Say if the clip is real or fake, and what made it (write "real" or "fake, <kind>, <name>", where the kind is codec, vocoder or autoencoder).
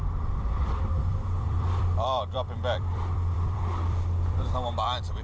fake, vocoder, BigVGAN v2